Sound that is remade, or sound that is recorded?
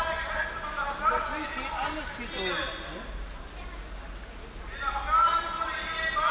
recorded